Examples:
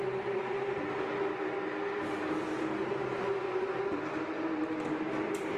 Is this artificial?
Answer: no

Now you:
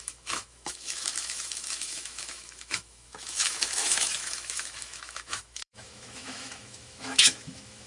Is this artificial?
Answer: yes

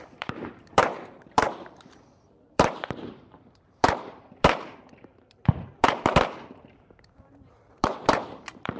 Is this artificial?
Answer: yes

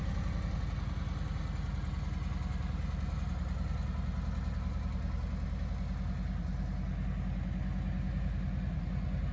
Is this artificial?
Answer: no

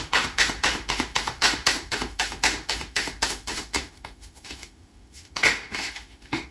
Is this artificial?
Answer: yes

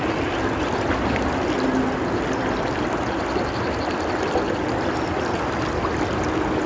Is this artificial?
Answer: no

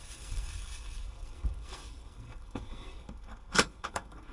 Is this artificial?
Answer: yes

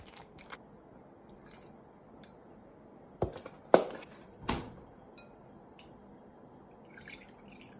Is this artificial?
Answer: no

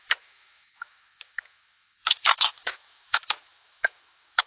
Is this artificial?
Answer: yes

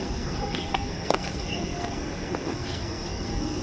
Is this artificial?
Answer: yes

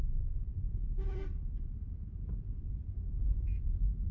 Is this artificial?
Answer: no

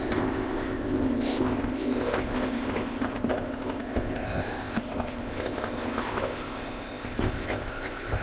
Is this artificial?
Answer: yes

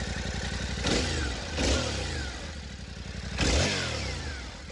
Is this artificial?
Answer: no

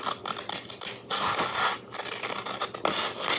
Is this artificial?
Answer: no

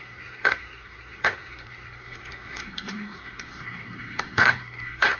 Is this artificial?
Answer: yes